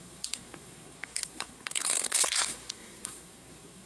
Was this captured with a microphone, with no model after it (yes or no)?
no